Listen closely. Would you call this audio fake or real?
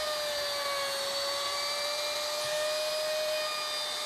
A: real